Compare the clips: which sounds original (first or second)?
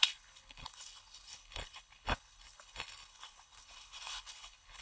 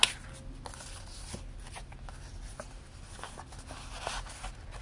second